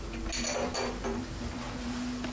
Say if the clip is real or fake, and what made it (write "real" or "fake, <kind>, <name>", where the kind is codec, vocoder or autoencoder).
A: real